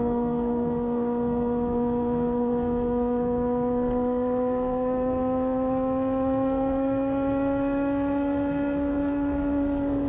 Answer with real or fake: fake